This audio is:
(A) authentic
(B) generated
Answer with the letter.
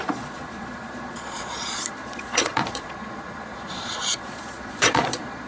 B